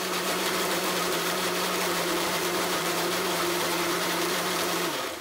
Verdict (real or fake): fake